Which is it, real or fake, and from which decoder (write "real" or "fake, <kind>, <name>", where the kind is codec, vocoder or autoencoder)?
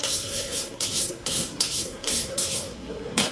fake, codec, SNAC